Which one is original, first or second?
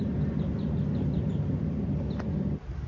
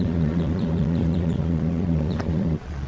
first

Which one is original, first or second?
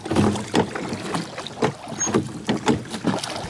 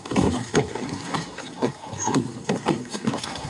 first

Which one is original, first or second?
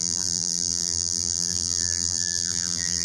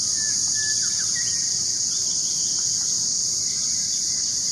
second